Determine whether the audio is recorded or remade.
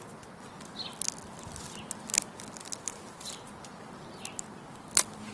recorded